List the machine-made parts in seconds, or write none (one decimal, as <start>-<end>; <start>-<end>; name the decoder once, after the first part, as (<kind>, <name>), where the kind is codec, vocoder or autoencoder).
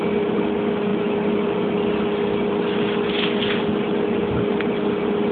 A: none